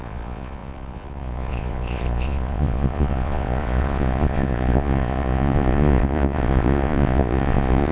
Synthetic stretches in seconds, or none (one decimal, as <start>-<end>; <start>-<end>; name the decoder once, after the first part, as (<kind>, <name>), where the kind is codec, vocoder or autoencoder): 0.0-7.9 (vocoder, Vocos)